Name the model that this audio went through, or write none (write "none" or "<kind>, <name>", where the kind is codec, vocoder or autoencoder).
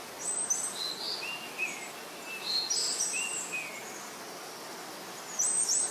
none